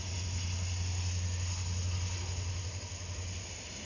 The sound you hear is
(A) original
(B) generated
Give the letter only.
A